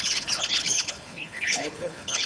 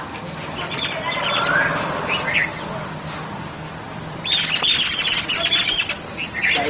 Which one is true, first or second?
second